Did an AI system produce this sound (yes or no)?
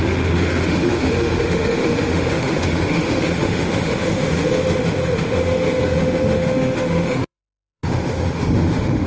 yes